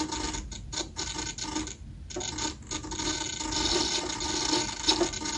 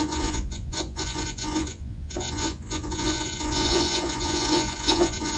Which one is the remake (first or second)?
second